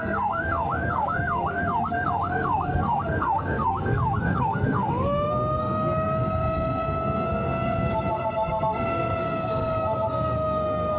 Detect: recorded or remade remade